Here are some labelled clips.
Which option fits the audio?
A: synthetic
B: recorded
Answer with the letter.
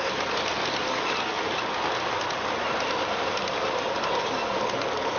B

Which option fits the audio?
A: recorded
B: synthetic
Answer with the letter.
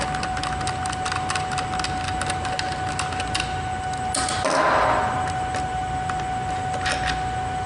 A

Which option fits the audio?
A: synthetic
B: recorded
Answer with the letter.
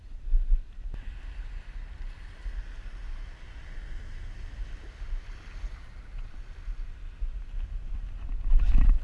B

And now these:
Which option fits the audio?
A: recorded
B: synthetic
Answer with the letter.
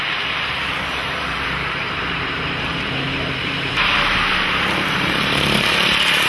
B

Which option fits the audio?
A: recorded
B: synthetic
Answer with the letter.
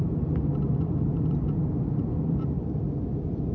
A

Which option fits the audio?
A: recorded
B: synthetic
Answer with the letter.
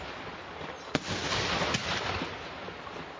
A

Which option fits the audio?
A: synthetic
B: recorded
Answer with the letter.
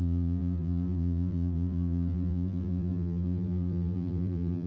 A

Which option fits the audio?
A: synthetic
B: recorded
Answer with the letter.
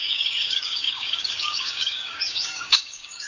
A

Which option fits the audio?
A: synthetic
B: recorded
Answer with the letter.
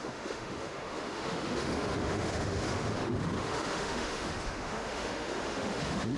A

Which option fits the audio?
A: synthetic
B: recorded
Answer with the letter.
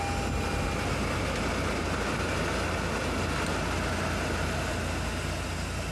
B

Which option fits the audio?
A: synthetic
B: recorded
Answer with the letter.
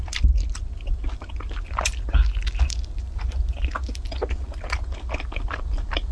B